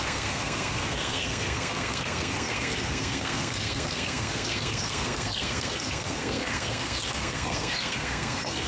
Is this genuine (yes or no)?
no